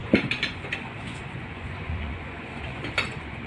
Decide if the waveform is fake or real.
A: fake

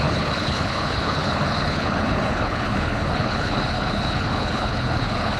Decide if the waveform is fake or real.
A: fake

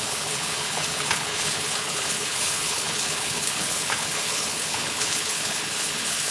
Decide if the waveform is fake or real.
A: fake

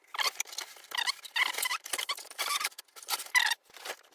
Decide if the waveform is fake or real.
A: fake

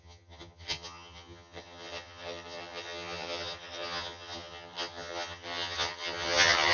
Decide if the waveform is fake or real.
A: fake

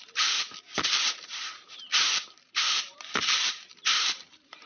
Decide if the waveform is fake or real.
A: fake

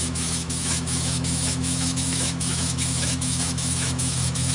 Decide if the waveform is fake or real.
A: fake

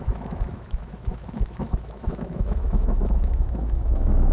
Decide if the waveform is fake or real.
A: fake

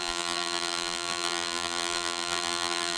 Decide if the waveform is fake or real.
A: fake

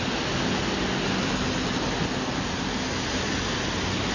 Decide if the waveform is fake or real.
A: real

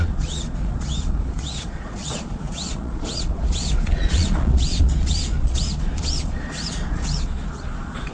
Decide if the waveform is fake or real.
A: fake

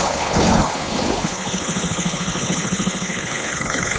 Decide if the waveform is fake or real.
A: fake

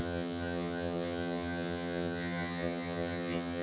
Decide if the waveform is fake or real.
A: fake